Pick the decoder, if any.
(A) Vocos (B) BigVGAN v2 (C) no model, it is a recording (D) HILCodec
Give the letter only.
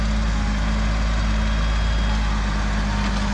C